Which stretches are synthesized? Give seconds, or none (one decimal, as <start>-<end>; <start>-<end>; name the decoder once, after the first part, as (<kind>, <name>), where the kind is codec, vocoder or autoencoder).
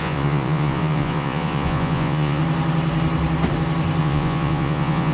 0.0-2.4 (vocoder, Vocos); 4.0-5.1